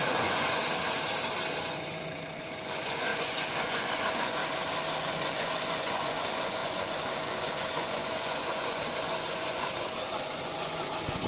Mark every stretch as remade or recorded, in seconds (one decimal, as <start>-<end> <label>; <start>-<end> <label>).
0.0-0.6 remade; 0.6-1.6 recorded; 1.6-4.4 remade; 4.4-5.0 recorded; 5.0-11.3 remade